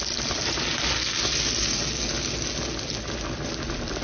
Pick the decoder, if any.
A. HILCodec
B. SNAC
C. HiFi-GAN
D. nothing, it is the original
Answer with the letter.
D